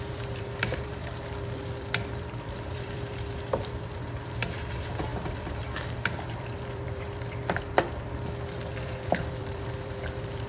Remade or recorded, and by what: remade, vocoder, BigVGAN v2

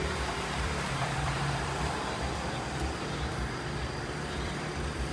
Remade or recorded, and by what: remade, vocoder, BigVGAN v2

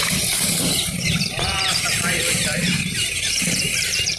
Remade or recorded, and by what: remade, vocoder, BigVGAN v2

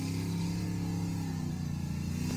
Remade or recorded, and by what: recorded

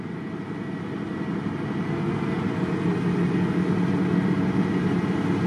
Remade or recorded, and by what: recorded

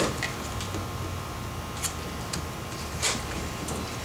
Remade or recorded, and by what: recorded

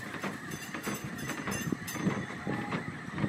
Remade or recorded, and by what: remade, vocoder, BigVGAN v2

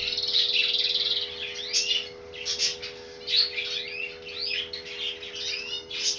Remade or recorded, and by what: recorded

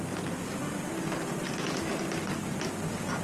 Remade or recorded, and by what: remade, vocoder, BigVGAN v2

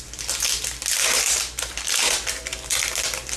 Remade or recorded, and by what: recorded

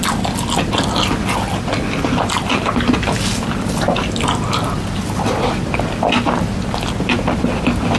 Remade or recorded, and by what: recorded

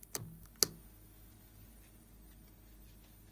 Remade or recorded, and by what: recorded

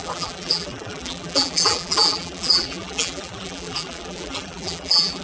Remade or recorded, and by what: remade, vocoder, BigVGAN v2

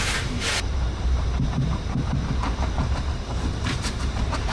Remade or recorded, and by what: remade, vocoder, BigVGAN v2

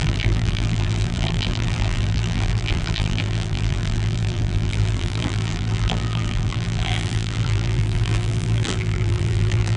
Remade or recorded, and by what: remade, vocoder, BigVGAN v2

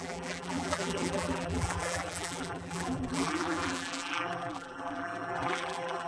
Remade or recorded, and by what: remade, vocoder, BigVGAN v2